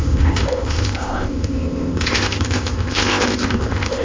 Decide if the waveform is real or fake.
fake